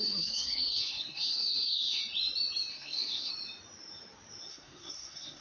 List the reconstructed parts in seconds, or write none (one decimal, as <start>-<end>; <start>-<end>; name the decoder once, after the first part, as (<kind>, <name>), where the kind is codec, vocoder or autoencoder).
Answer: 0.0-2.0 (codec, SNAC); 2.7-3.3; 4.5-5.4